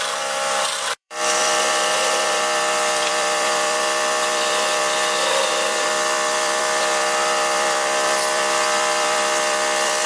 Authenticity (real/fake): fake